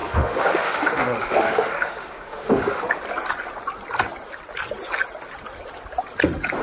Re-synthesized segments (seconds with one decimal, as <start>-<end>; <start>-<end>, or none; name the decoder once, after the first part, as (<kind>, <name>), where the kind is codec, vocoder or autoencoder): 0.0-3.0 (autoencoder, DAC-VAE)